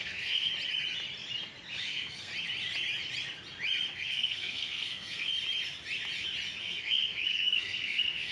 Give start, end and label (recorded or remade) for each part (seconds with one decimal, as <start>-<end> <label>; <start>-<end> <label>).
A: 0.0-0.5 remade; 0.5-1.9 recorded; 1.9-2.3 remade; 2.3-3.9 recorded; 3.9-5.3 remade; 5.3-6.6 recorded; 6.6-8.3 remade